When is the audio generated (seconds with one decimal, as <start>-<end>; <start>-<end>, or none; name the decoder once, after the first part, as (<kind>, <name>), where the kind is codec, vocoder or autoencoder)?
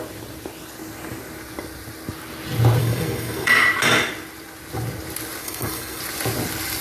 2.8-3.5 (codec, SNAC); 5.4-6.0